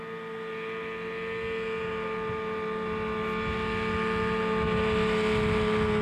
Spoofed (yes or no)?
no